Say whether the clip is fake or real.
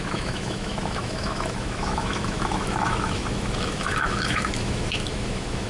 fake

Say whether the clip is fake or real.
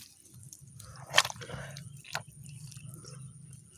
real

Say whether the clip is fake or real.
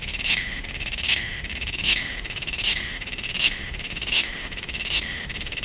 fake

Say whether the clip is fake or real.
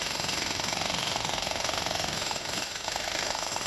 fake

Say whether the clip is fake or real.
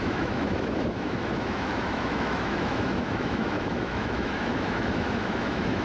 fake